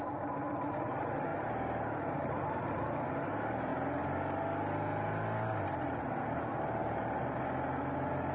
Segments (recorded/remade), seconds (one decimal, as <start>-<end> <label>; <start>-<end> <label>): 0.0-6.8 recorded; 6.8-7.4 remade; 7.4-8.3 recorded